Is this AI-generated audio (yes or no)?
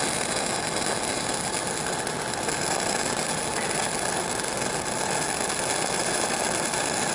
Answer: no